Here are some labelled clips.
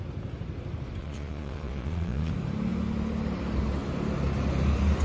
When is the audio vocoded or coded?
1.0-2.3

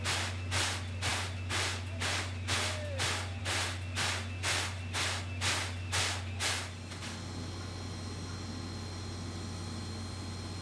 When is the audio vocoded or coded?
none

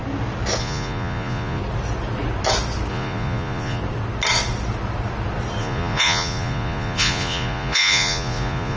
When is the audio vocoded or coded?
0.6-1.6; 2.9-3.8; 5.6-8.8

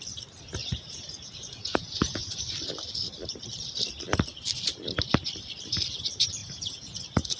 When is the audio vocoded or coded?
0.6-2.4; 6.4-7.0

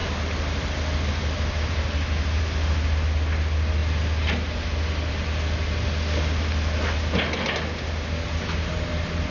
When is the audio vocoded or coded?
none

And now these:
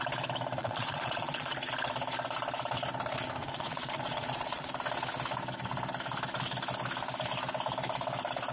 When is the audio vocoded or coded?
0.6-1.7; 3.4-4.7

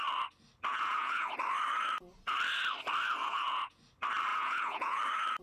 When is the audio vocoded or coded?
0.7-1.3; 3.2-3.8; 4.3-5.0

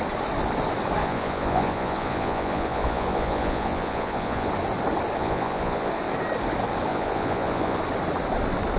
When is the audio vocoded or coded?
1.0-4.5; 5.2-5.9; 6.9-7.8